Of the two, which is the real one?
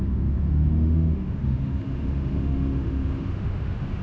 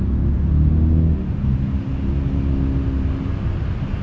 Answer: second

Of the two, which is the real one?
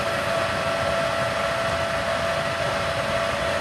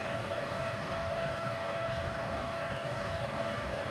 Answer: first